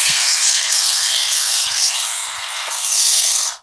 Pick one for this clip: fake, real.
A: fake